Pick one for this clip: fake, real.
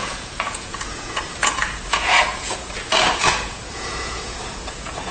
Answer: fake